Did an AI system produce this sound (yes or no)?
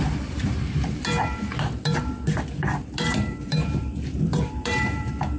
yes